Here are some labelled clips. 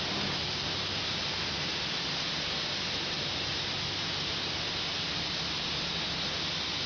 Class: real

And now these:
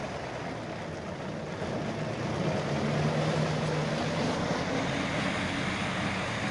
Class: real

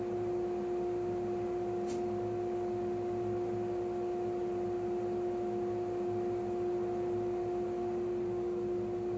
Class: real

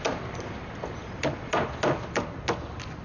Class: real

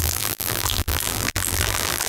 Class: fake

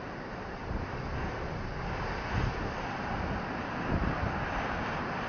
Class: real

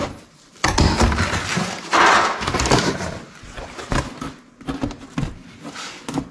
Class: real